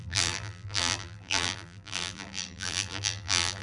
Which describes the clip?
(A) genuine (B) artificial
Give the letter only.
B